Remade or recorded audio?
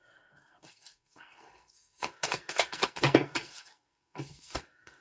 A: remade